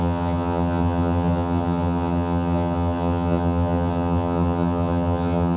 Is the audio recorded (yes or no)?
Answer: no